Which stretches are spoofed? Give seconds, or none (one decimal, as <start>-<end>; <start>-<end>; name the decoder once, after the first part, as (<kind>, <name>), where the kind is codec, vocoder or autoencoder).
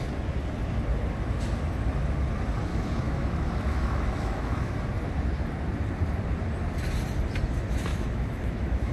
2.7-4.8 (autoencoder, DAC-VAE); 7.9-8.9